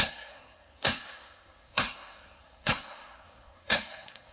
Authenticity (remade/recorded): remade